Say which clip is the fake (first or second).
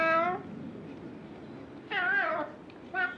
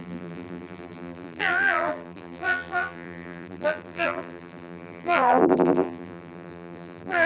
second